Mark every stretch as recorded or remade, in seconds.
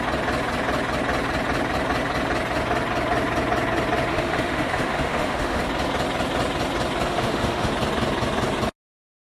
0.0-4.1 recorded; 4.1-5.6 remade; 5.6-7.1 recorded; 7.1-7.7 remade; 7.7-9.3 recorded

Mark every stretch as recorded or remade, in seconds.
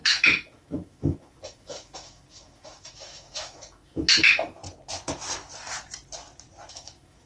0.0-4.6 remade; 4.6-6.7 recorded; 6.7-7.3 remade